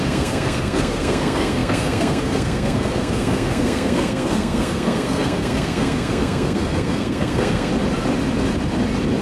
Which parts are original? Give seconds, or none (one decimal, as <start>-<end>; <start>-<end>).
7.7-9.2

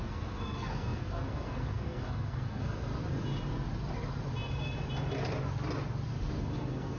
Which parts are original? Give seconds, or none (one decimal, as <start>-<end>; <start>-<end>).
2.9-6.4

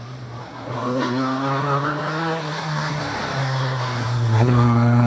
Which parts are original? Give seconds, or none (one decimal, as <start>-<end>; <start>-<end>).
0.0-0.4; 3.0-3.4

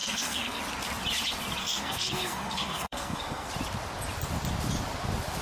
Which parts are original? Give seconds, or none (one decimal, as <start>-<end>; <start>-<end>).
0.6-1.6; 3.5-5.4